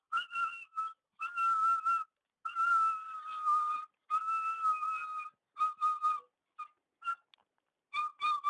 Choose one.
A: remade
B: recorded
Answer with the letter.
B